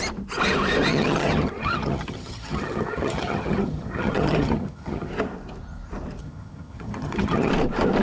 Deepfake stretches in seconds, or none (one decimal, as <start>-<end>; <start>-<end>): 0.9-5.1; 6.2-7.5